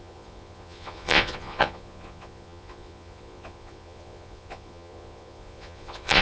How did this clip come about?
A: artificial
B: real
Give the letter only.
A